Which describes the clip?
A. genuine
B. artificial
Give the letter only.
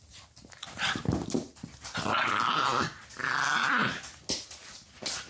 A